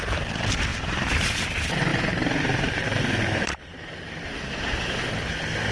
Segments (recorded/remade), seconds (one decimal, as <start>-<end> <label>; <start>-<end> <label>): 0.0-0.7 recorded; 0.7-1.4 remade; 1.4-1.9 recorded; 1.9-5.3 remade; 5.3-5.7 recorded